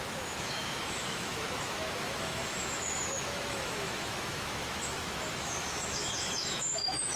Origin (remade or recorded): remade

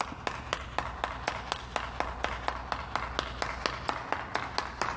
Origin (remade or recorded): recorded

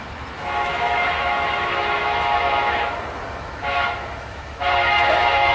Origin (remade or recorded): remade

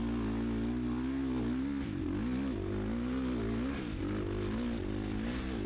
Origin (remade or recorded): recorded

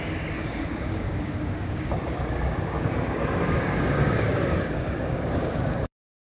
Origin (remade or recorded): remade